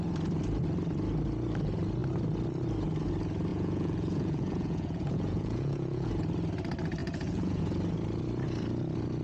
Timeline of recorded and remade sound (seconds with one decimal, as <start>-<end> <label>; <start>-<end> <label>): 0.0-3.5 recorded; 3.5-6.1 remade; 6.1-7.0 recorded; 7.0-7.6 remade; 7.6-9.2 recorded